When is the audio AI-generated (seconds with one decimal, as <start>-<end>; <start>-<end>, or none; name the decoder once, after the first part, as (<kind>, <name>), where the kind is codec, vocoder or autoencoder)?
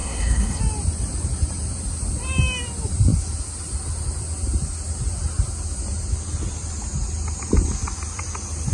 0.0-0.6 (codec, SNAC)